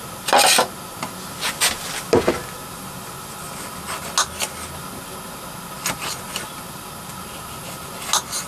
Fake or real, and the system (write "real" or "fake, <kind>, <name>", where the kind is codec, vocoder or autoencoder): real